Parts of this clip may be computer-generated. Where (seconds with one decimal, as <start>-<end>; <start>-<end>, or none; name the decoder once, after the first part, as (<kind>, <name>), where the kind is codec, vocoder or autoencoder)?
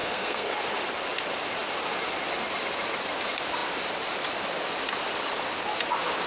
0.0-0.7 (codec, SNAC)